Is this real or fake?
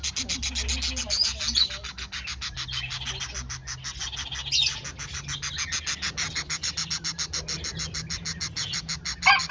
real